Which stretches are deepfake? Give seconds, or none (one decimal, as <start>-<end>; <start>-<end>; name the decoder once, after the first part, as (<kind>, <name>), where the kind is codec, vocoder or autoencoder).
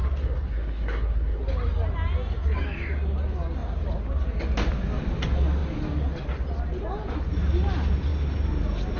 0.0-1.4 (codec, SNAC)